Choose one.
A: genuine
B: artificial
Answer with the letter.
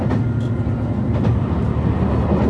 A